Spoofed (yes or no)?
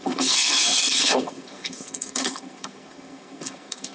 yes